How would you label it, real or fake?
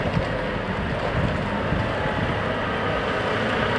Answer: real